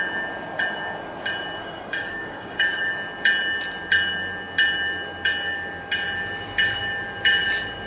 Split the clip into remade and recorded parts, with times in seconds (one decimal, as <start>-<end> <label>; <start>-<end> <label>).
0.0-1.6 recorded; 1.6-2.9 remade; 2.9-7.9 recorded